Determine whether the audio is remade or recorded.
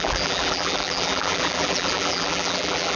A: remade